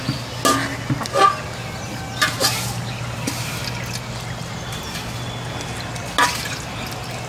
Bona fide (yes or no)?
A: yes